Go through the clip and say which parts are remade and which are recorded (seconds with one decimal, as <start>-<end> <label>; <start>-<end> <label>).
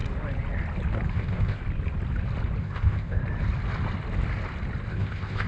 0.0-1.1 recorded; 1.1-1.6 remade; 1.6-2.6 recorded; 2.6-3.2 remade; 3.2-4.9 recorded; 4.9-5.5 remade